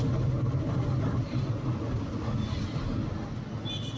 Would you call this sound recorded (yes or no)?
yes